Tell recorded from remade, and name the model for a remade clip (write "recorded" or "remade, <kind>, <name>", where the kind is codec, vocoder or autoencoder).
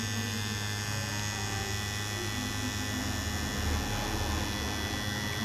recorded